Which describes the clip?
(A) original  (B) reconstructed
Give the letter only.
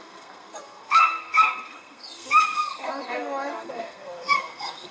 B